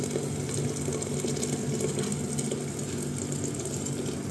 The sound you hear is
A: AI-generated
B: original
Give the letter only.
B